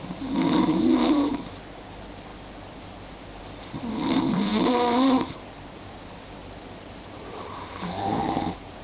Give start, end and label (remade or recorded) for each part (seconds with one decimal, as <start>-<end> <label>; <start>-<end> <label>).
0.0-0.6 recorded; 0.6-4.5 remade; 4.5-6.0 recorded; 6.0-8.2 remade; 8.2-8.8 recorded